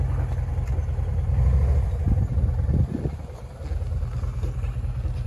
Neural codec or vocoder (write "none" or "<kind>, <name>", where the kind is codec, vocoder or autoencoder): none